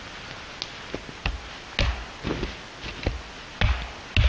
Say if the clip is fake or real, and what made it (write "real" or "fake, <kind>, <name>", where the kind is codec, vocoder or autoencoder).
real